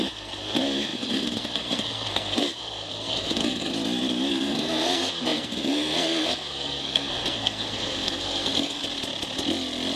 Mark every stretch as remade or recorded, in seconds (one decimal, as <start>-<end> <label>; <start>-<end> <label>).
0.0-3.7 remade; 3.7-4.3 recorded; 4.3-8.8 remade; 8.8-10.0 recorded

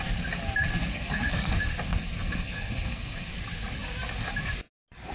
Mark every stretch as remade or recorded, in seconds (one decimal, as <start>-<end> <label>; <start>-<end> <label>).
0.0-0.9 recorded; 0.9-1.5 remade; 1.5-1.9 recorded; 1.9-3.3 remade; 3.3-5.1 recorded

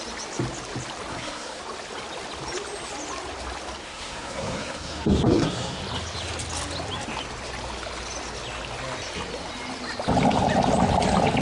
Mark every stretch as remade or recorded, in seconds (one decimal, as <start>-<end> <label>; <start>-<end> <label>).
0.0-1.1 recorded; 1.1-1.6 remade; 1.6-3.8 recorded; 3.8-5.8 remade; 5.8-11.4 recorded

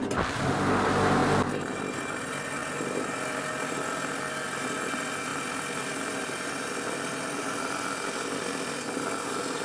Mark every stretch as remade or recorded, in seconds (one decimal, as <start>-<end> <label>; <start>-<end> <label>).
0.0-9.6 recorded